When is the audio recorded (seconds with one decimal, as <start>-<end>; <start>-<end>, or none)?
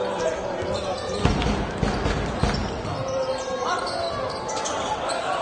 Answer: 1.2-2.6; 3.9-5.4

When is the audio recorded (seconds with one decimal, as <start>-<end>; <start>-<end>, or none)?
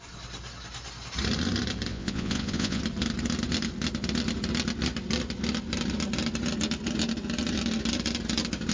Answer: 0.0-1.9; 2.8-8.7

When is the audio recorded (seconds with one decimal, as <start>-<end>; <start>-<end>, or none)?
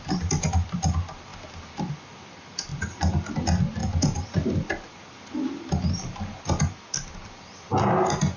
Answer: 0.0-8.4